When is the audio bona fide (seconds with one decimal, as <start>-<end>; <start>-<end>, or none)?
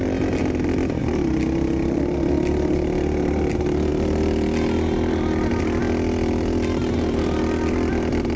0.0-8.4